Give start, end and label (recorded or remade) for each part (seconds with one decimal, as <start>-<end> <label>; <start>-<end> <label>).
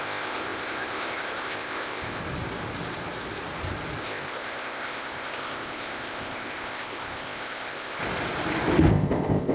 0.0-2.2 remade; 2.2-4.0 recorded; 4.0-8.0 remade; 8.0-8.9 recorded; 8.9-9.5 remade